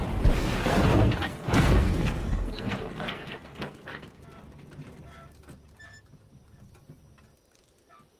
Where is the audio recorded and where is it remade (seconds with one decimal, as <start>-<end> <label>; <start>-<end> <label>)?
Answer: 0.0-0.4 recorded; 0.4-4.2 remade; 4.2-8.2 recorded

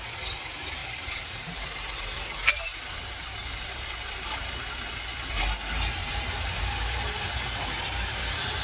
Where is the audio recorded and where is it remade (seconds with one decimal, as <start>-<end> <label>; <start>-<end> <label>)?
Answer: 0.0-0.8 recorded; 0.8-5.0 remade; 5.0-6.0 recorded; 6.0-8.2 remade; 8.2-8.6 recorded

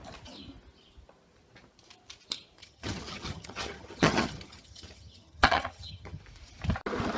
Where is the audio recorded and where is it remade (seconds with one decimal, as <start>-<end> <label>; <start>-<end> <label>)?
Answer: 0.0-2.6 recorded; 2.6-6.2 remade; 6.2-7.2 recorded

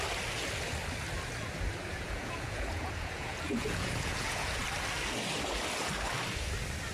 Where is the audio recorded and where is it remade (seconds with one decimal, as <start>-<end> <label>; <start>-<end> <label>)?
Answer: 0.0-1.9 recorded; 1.9-4.6 remade; 4.6-6.9 recorded

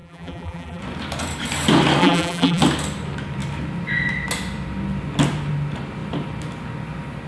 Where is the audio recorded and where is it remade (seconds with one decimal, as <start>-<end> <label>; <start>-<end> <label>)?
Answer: 0.0-0.8 remade; 0.8-2.0 recorded; 2.0-2.6 remade; 2.6-7.3 recorded

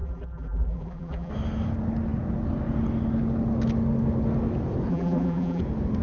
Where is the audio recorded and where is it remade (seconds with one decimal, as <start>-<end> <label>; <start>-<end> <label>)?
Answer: 0.0-1.3 remade; 1.3-4.9 recorded; 4.9-5.6 remade; 5.6-6.0 recorded

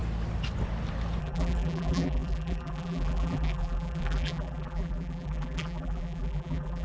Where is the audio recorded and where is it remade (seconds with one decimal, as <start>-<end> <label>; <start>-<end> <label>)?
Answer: 0.0-1.2 recorded; 1.2-6.8 remade